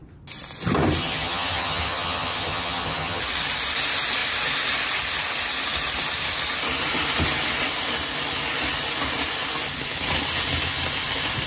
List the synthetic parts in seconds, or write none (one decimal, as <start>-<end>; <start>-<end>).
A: 1.0-3.2